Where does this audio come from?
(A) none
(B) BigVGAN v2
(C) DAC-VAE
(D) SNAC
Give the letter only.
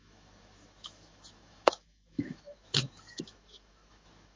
C